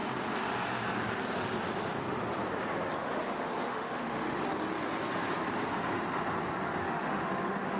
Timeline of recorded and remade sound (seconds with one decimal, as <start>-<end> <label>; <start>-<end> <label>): 0.0-3.0 recorded; 3.0-4.4 remade; 4.4-6.8 recorded; 6.8-7.8 remade